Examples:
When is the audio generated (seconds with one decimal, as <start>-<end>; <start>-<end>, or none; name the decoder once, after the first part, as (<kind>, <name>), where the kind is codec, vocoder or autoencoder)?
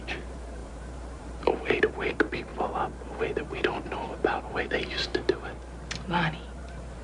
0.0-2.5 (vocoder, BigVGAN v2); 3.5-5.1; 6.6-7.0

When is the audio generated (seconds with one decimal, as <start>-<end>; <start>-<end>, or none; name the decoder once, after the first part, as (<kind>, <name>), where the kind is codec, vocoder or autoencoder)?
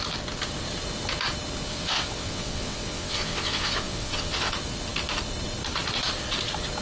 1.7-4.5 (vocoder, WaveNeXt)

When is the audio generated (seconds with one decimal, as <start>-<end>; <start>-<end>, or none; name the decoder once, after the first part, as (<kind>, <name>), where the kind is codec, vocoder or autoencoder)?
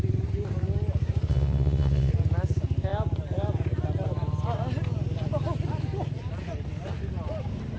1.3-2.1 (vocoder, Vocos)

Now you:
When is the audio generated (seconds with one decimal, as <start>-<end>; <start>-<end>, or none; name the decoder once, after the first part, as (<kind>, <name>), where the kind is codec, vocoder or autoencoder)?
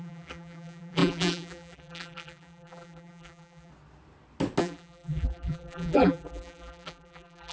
0.0-3.7 (vocoder, BigVGAN v2); 4.6-7.5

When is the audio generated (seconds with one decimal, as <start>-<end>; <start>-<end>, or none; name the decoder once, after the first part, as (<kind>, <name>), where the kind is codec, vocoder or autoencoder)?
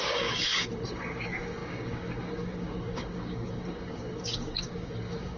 0.0-5.4 (codec, DAC)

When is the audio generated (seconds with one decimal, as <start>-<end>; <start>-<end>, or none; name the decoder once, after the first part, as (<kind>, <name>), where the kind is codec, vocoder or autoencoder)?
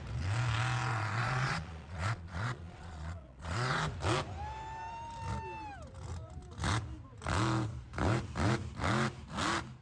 0.9-3.8 (vocoder, Vocos)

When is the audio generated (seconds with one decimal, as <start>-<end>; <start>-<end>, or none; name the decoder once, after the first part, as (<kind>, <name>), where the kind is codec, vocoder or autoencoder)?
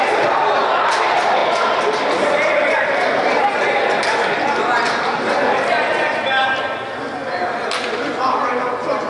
1.4-5.2 (vocoder, BigVGAN v2); 7.2-8.5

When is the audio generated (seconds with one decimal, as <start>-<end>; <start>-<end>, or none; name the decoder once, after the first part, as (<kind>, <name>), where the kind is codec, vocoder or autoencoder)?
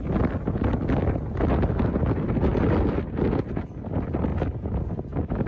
none